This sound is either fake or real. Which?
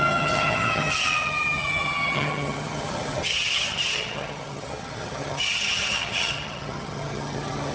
fake